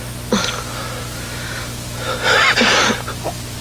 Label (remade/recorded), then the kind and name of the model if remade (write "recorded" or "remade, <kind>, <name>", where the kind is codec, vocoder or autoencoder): recorded